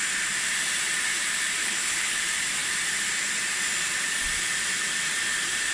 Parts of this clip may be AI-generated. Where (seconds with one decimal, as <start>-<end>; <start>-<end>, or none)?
1.6-2.2